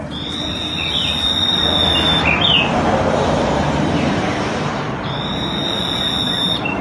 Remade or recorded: remade